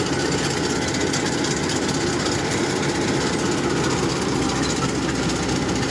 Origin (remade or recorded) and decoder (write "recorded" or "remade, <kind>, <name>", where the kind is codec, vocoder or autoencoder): recorded